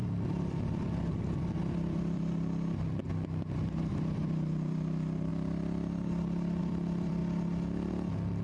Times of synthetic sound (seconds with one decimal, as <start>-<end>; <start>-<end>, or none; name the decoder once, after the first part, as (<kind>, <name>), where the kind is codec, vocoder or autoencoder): 0.0-3.0 (vocoder, BigVGAN v2); 3.9-7.2; 7.9-8.4